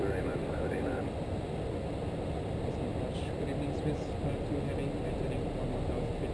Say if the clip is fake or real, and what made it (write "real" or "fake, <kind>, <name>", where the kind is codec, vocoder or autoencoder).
real